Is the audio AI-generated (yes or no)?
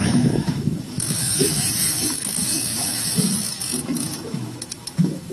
yes